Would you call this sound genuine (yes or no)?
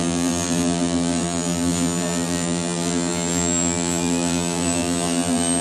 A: no